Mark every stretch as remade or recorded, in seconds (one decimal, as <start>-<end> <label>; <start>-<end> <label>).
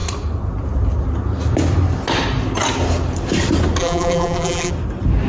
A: 0.0-3.8 recorded; 3.8-4.7 remade; 4.7-5.3 recorded